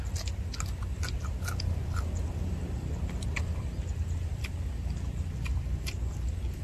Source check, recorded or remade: recorded